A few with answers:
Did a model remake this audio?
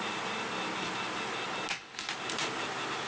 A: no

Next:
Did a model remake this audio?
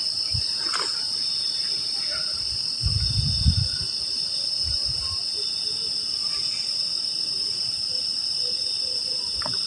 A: yes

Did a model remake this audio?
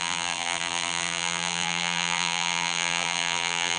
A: yes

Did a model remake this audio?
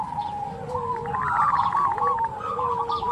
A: no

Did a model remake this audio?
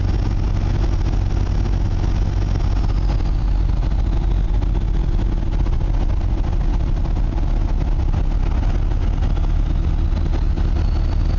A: no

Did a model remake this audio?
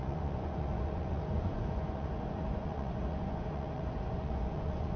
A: yes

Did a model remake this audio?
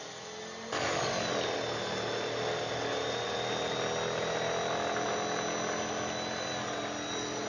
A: no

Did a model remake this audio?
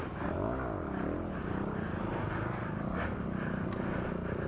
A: no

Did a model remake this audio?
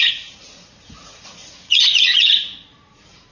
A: yes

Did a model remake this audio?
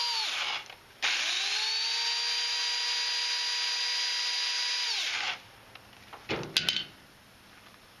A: no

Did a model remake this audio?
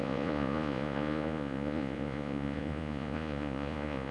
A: yes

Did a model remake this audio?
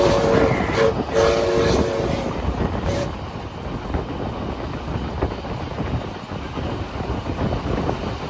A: no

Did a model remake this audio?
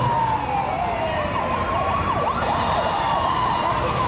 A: no